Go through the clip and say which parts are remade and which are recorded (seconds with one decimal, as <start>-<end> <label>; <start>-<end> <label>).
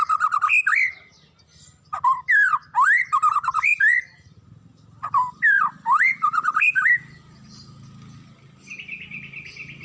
0.0-9.8 recorded